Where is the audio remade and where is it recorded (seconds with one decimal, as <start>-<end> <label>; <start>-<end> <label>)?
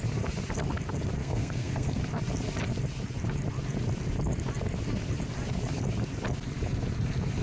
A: 0.0-1.2 recorded; 1.2-2.0 remade; 2.0-7.4 recorded